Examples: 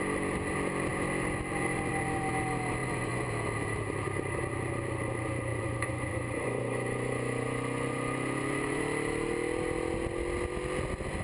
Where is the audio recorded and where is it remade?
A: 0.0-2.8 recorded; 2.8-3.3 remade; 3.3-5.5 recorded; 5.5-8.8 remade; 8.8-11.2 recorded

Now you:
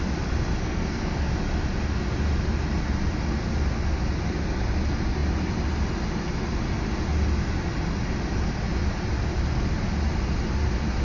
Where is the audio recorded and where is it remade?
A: 0.0-0.6 recorded; 0.6-1.3 remade; 1.3-11.0 recorded

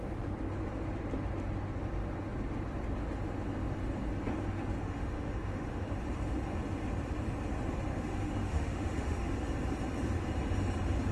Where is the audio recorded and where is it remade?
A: 0.0-4.8 recorded; 4.8-5.9 remade; 5.9-7.9 recorded; 7.9-9.3 remade; 9.3-11.1 recorded

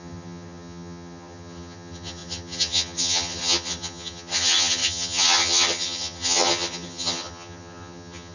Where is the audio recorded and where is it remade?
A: 0.0-8.3 remade

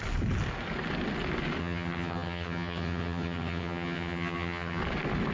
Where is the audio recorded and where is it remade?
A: 0.0-1.6 recorded; 1.6-4.8 remade; 4.8-5.3 recorded